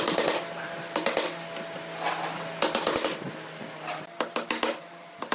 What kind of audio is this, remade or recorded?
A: recorded